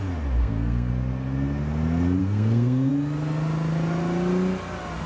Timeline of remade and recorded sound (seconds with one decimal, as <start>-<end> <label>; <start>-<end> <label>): 0.0-0.4 recorded; 0.4-0.9 remade; 0.9-2.2 recorded; 2.2-2.9 remade; 2.9-5.1 recorded

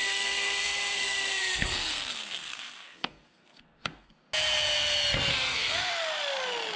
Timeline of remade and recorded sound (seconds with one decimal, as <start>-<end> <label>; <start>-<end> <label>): 0.0-4.1 remade; 4.1-5.3 recorded; 5.3-5.9 remade; 5.9-6.8 recorded

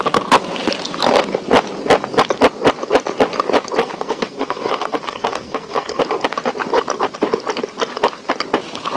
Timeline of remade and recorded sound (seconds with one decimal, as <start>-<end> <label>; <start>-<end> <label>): 0.0-3.8 recorded; 3.8-6.0 remade; 6.0-9.0 recorded

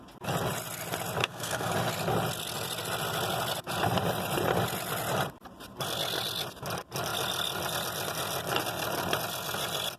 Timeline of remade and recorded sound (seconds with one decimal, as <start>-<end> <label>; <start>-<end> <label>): 0.0-1.2 recorded; 1.2-1.7 remade; 1.7-10.0 recorded

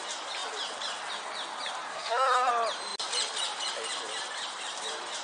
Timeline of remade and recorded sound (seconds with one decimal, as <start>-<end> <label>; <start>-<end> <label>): 0.0-1.9 recorded; 1.9-2.5 remade; 2.5-5.2 recorded

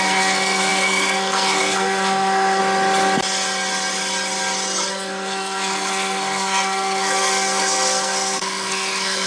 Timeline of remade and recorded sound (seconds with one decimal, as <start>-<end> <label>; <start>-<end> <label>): 0.0-2.6 remade; 2.6-4.9 recorded; 4.9-9.3 remade

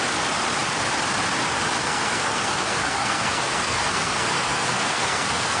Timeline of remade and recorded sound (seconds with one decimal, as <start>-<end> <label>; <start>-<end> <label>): 0.0-1.8 recorded; 1.8-5.6 remade